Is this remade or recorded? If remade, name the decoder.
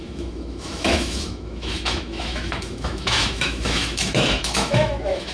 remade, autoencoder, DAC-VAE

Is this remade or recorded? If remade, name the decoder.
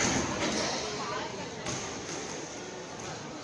recorded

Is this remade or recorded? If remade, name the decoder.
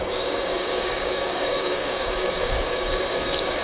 remade, codec, DAC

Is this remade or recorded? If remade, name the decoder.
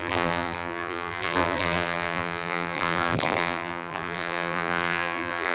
remade, vocoder, BigVGAN v2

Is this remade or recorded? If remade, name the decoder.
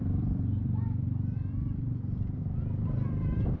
remade, vocoder, BigVGAN v2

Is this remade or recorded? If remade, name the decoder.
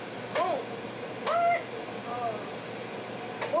recorded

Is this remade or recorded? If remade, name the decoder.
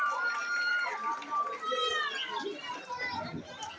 remade, vocoder, BigVGAN v2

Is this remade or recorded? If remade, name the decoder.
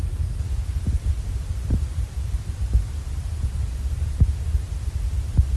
remade, vocoder, BigVGAN v2